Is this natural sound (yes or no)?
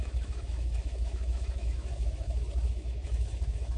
no